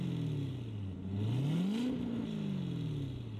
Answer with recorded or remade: recorded